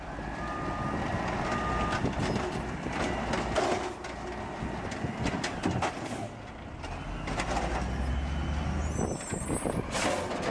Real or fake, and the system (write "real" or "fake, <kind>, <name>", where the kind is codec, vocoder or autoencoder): real